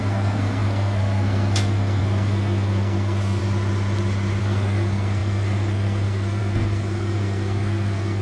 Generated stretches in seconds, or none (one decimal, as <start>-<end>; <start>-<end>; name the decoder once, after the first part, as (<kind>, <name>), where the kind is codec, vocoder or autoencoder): 0.0-3.4 (codec, SNAC); 4.4-8.2